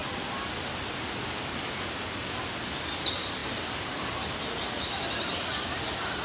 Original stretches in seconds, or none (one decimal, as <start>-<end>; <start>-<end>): 0.0-6.2